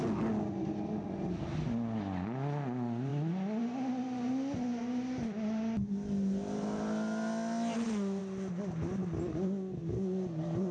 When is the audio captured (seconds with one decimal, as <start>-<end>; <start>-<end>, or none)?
0.0-10.7

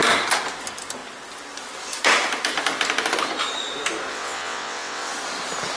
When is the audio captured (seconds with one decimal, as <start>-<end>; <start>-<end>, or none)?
0.0-4.1; 5.1-5.8

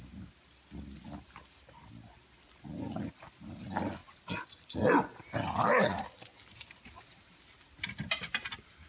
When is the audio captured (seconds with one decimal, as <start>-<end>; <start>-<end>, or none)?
0.0-8.9

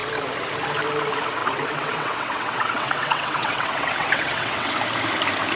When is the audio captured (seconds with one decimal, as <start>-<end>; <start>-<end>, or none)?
0.0-1.4; 4.7-5.6

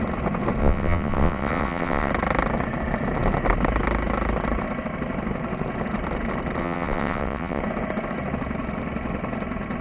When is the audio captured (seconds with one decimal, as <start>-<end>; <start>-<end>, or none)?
0.0-0.6; 2.1-6.6; 7.6-9.8

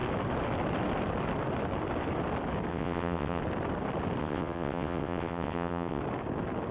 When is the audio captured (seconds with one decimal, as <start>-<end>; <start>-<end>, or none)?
0.0-2.7; 3.4-4.2; 6.0-6.7